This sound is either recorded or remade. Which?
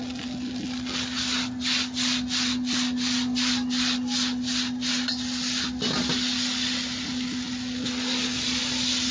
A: recorded